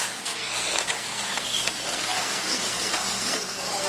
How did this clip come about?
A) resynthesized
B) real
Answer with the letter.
A